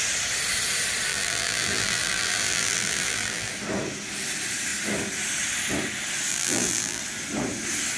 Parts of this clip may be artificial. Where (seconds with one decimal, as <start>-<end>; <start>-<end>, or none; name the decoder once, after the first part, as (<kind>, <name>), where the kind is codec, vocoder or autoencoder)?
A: 1.1-3.5 (vocoder, BigVGAN v2); 6.3-7.0